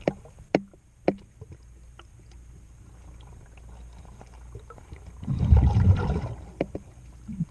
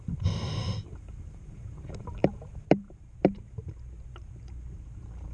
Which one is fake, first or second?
second